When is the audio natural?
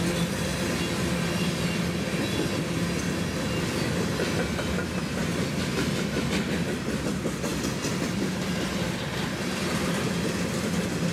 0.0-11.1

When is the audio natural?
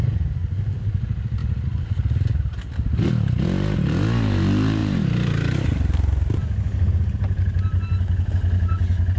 0.0-1.4; 3.1-4.8; 8.3-9.2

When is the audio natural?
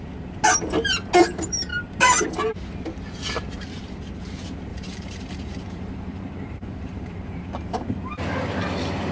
0.0-1.7; 2.2-4.7; 8.2-9.1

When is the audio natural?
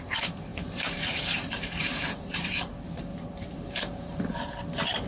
0.0-0.5; 2.5-3.1; 4.6-5.1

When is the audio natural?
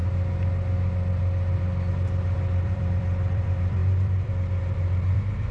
0.0-1.9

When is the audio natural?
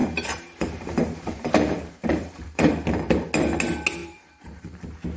3.1-4.0; 4.8-5.2